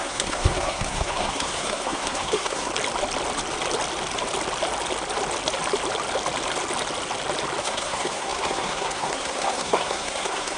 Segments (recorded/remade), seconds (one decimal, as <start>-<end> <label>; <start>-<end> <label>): 0.0-2.7 remade; 2.7-7.6 recorded; 7.6-10.6 remade